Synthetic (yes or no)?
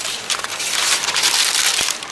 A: no